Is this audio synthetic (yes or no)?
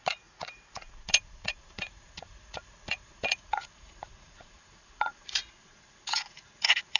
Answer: yes